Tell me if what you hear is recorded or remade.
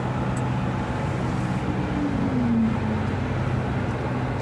recorded